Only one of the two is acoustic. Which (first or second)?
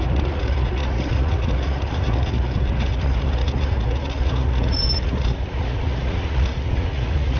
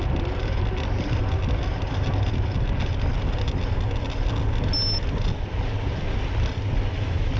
second